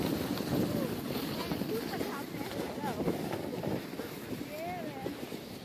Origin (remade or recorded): recorded